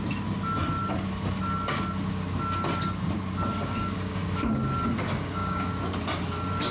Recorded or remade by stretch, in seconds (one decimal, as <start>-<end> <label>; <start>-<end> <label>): 0.0-3.5 recorded; 3.5-4.5 remade; 4.5-4.9 recorded; 4.9-5.7 remade; 5.7-6.7 recorded